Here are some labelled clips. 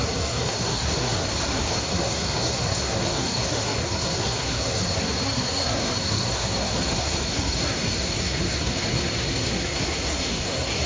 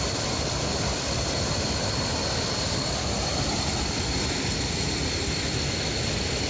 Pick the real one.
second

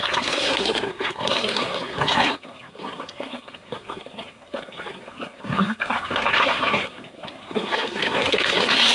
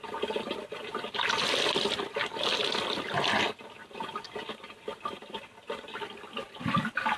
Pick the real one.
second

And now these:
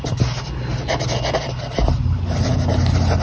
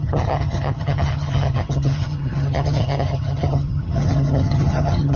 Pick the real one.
first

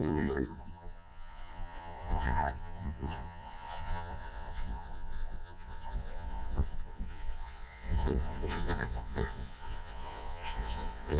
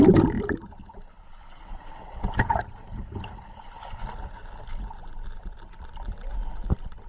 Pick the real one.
second